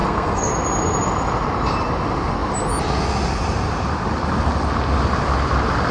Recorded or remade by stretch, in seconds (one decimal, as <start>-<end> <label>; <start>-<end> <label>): 0.0-0.5 remade; 0.5-5.9 recorded